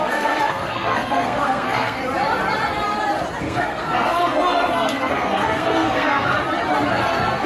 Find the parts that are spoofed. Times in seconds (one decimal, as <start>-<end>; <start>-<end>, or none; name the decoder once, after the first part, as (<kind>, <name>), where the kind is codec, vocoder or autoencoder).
0.0-2.0 (codec, SNAC); 3.4-6.3; 6.9-7.5